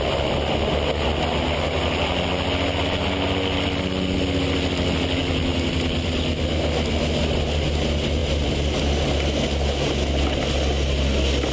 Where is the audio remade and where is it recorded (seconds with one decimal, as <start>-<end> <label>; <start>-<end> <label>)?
0.0-11.5 recorded